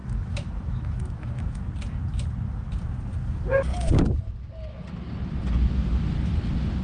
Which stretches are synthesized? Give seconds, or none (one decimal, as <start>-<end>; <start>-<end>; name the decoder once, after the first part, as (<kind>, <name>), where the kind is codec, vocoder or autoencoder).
0.0-1.6 (autoencoder, DAC-VAE)